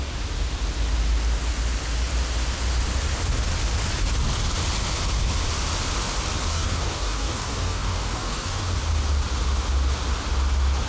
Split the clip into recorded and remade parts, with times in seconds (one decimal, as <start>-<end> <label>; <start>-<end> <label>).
0.0-6.5 recorded; 6.5-8.6 remade; 8.6-10.9 recorded